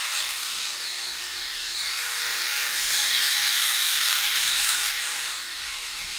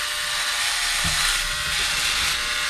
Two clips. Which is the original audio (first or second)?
second